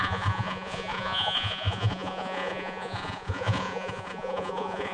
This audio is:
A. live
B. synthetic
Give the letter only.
B